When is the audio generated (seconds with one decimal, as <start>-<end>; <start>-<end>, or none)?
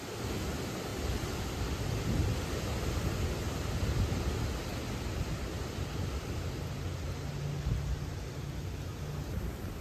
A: 0.9-1.6